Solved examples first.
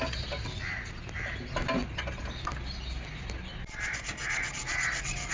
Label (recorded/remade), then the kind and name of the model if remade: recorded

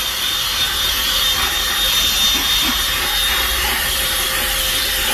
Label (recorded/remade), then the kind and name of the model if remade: recorded